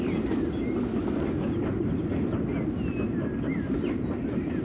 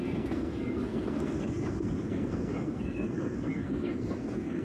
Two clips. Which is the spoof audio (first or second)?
second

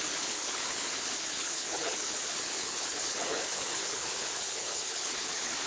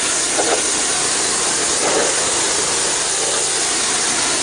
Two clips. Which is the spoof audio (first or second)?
first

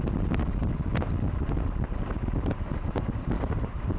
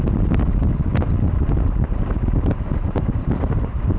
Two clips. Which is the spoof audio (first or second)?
second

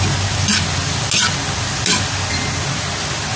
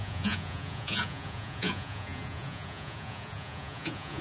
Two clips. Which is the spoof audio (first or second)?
second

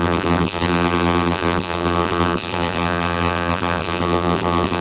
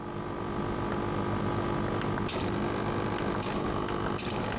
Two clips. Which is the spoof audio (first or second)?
first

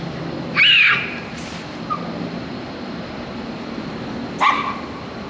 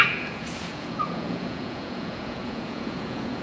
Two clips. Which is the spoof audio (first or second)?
second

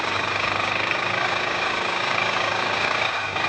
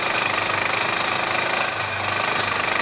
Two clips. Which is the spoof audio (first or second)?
first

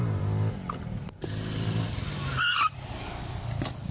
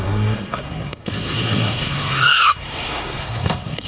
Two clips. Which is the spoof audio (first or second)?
second